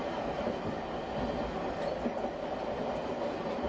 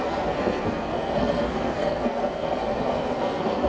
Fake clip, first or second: second